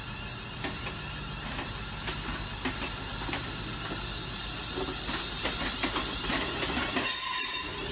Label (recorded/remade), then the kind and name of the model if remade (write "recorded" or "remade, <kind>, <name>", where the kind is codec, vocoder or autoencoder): recorded